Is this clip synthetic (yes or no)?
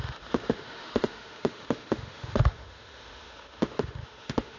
yes